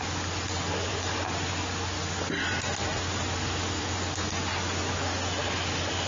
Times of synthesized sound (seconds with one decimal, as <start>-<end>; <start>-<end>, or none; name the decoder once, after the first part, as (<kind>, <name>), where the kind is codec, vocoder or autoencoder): none